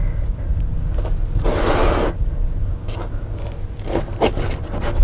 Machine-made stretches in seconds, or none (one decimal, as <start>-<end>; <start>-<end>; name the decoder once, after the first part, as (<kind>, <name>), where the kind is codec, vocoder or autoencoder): 2.6-3.1 (codec, DAC)